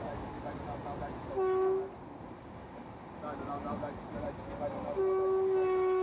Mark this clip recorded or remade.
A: recorded